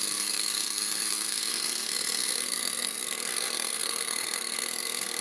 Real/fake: fake